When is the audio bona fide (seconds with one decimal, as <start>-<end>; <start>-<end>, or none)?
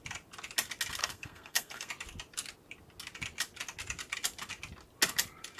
0.0-1.0; 1.9-5.6